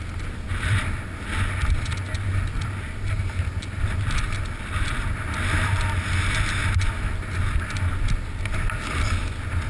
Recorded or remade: recorded